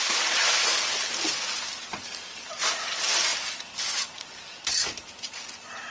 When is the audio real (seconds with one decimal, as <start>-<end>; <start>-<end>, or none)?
0.7-2.3; 3.3-5.9